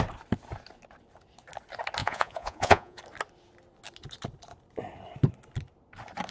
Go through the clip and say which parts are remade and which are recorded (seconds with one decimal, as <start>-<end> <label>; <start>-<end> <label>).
0.0-2.0 recorded; 2.0-3.0 remade; 3.0-6.3 recorded